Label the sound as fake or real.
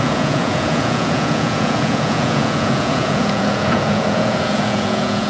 fake